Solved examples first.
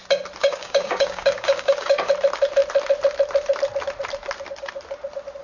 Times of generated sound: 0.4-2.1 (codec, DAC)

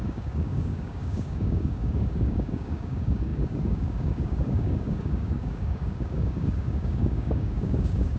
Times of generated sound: 0.0-8.2 (codec, DAC)

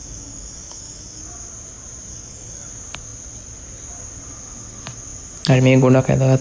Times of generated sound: 0.0-1.2 (codec, DAC); 2.1-2.7